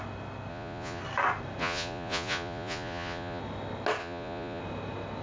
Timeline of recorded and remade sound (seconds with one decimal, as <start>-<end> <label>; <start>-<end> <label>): 0.0-0.5 recorded; 0.5-1.0 remade; 1.0-1.6 recorded; 1.6-3.4 remade; 3.4-4.0 recorded; 4.0-4.6 remade; 4.6-5.2 recorded